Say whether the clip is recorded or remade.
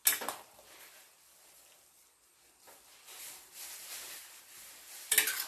recorded